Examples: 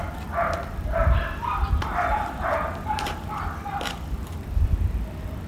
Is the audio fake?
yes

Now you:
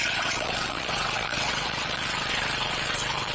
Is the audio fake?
yes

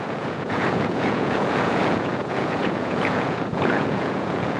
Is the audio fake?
yes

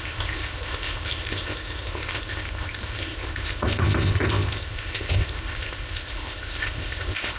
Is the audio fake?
yes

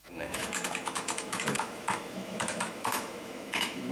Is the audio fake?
yes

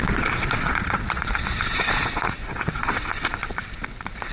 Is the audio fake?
yes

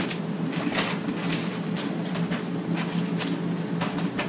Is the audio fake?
no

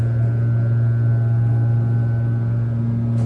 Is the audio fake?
no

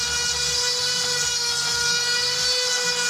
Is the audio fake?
no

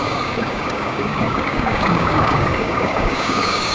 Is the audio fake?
yes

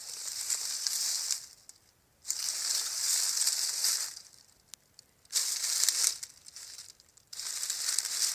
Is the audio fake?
no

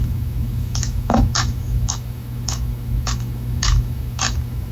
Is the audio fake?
yes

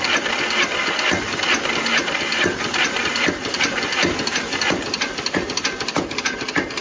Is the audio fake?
no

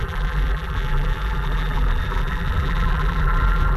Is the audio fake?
yes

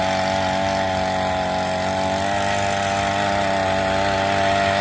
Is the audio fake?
no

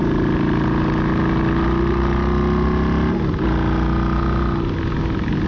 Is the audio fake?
no